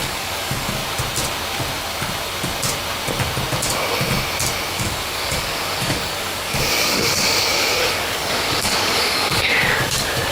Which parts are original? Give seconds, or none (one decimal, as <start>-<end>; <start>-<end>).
0.8-4.7